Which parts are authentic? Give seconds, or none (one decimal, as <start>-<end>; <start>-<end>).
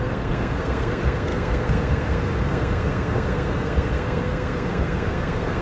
none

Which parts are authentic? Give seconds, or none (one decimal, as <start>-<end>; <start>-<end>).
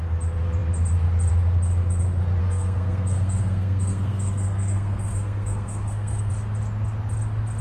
0.0-2.4; 6.3-7.6